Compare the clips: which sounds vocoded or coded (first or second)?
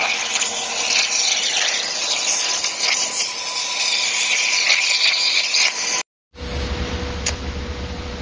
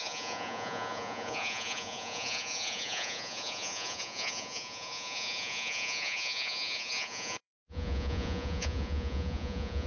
second